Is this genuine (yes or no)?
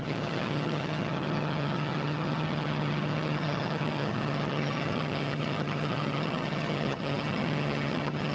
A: no